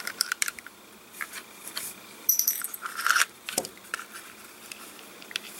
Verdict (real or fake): fake